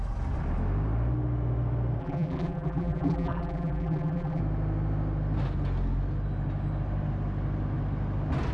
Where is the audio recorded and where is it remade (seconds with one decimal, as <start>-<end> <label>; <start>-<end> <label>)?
0.0-2.0 recorded; 2.0-4.4 remade; 4.4-8.5 recorded